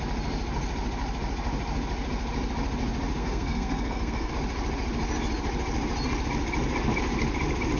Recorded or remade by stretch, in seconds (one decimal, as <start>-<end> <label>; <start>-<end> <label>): 0.0-3.2 recorded; 3.2-4.3 remade; 4.3-7.8 recorded